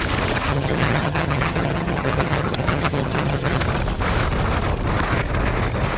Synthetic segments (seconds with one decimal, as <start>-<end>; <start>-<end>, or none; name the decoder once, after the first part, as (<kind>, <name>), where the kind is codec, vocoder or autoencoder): 0.5-3.6 (vocoder, HiFi-GAN)